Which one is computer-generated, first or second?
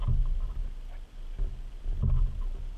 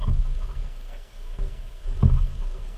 second